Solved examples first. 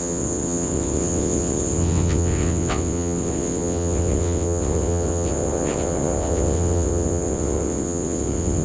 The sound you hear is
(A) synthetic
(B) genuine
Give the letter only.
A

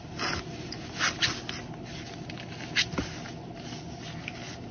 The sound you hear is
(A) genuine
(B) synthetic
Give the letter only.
A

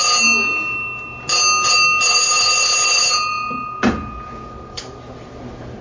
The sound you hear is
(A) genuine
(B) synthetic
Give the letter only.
A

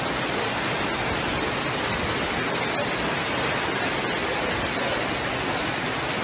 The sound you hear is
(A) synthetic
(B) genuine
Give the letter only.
B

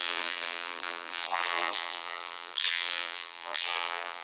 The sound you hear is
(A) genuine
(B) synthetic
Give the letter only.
B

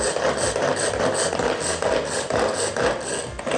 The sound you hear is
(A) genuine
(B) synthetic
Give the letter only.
A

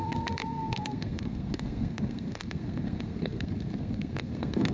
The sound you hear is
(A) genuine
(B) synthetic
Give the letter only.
B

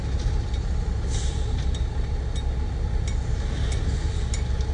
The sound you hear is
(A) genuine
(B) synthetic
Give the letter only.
A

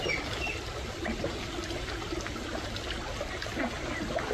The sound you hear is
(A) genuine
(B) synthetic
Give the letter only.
A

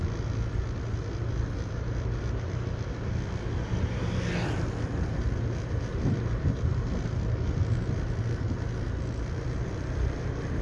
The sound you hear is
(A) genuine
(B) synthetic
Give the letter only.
A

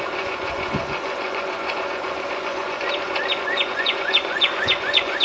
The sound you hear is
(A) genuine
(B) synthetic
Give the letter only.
B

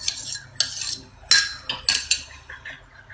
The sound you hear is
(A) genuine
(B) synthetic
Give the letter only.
A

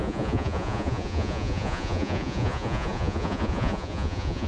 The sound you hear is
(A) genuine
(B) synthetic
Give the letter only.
B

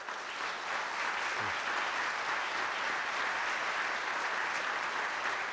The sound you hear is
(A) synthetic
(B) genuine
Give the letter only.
B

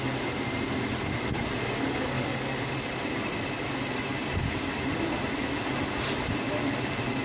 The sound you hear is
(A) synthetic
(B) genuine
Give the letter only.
B